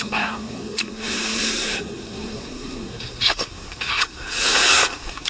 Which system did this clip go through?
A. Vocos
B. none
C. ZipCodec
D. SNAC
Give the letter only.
D